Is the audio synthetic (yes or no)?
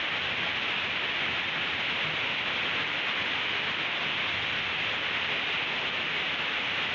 no